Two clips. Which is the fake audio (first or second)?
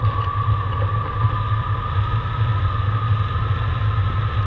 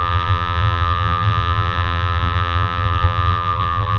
second